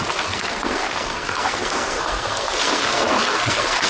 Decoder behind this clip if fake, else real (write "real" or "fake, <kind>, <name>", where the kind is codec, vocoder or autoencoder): fake, codec, SNAC